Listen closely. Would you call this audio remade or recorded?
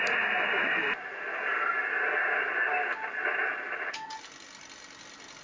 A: recorded